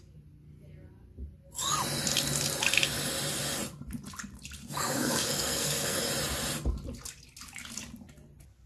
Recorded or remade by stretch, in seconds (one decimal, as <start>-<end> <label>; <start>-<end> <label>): 0.0-4.6 recorded; 4.6-6.0 remade; 6.0-8.7 recorded